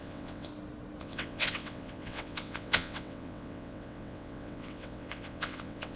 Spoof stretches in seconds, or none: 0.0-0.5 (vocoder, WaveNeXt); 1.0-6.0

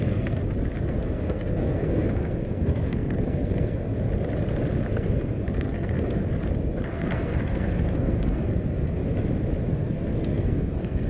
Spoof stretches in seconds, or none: 0.0-0.4 (codec, SNAC); 0.9-3.9; 4.9-6.2; 6.9-9.0; 9.7-11.1

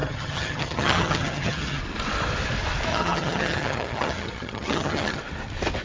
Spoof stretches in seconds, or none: 0.0-1.8 (vocoder, HiFi-GAN); 2.9-5.2

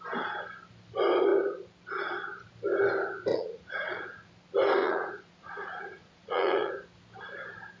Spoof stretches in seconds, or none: 3.3-4.3 (vocoder, Vocos); 4.8-6.7